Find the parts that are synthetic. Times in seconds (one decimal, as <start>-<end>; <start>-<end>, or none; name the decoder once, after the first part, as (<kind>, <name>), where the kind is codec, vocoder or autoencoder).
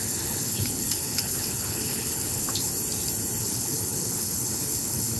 0.0-2.7 (codec, HILCodec); 3.4-5.2